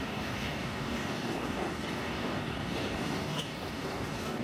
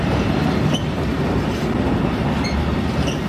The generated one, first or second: first